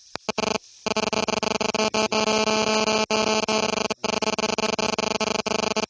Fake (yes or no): no